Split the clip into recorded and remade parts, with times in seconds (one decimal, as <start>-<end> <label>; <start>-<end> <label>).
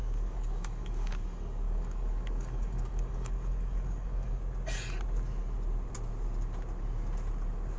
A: 0.0-4.4 remade; 4.4-7.8 recorded